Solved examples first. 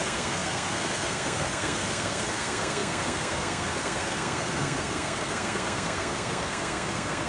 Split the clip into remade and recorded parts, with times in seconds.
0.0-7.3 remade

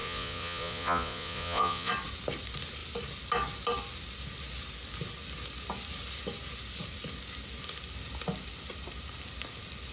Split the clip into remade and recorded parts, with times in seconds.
0.0-1.9 remade; 1.9-9.9 recorded